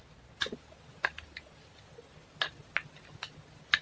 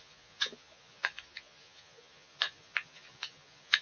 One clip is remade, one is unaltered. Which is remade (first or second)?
second